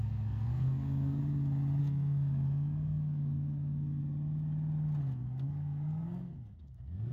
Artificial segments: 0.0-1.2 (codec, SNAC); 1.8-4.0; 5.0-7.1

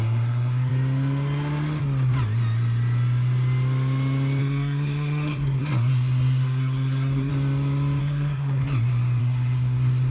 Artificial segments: 0.0-0.7 (codec, SNAC); 4.4-7.3; 8.0-8.6; 9.2-10.1

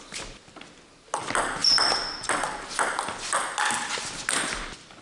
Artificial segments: none

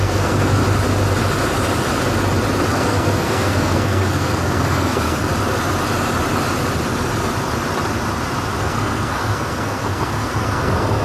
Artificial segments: 0.0-0.6 (codec, SNAC); 2.7-5.3; 8.6-11.0

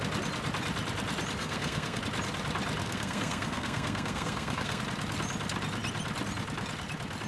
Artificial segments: 1.4-2.0 (codec, SNAC); 2.8-4.8

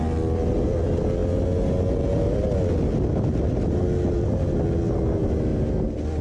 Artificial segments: none

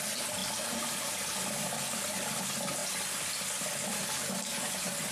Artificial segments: none

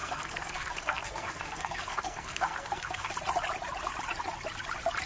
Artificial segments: 0.0-3.1 (codec, SNAC)